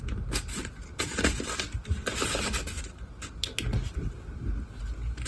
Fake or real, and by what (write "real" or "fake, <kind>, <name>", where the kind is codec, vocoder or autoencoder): real